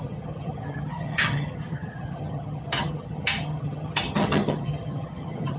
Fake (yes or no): yes